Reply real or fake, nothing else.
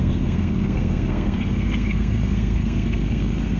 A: fake